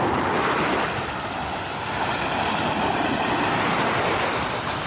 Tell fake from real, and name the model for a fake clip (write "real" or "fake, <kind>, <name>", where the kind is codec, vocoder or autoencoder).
real